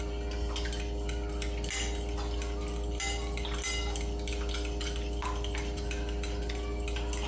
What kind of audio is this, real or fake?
real